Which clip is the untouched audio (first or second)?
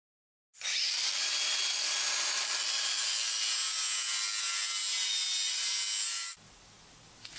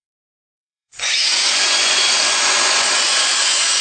first